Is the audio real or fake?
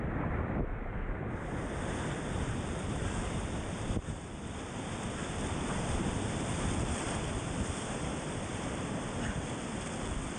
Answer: fake